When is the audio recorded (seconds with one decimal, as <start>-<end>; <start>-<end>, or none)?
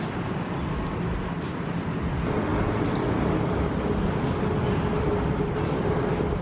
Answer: 0.0-6.4